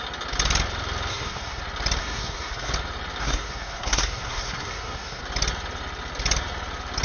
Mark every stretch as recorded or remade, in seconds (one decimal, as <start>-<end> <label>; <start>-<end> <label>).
0.0-1.1 recorded; 1.1-1.6 remade; 1.6-2.0 recorded; 2.0-2.7 remade; 2.7-3.2 recorded; 3.2-5.2 remade; 5.2-7.0 recorded

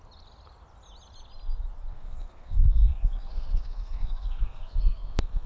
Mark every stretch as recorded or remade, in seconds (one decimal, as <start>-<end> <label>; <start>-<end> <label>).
0.0-1.9 recorded; 1.9-5.5 remade